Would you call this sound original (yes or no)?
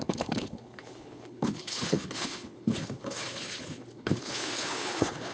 no